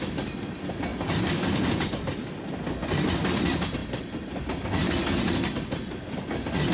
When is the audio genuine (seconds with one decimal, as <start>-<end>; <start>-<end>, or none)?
0.0-6.7